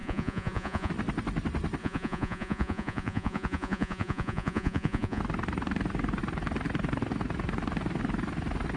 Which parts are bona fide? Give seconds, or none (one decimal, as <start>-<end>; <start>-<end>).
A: 0.9-1.8; 5.2-8.8